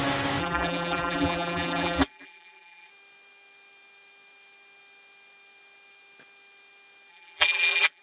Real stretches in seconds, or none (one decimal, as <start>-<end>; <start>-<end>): 0.0-0.4; 2.9-7.1